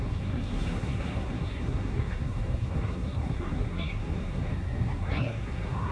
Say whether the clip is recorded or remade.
remade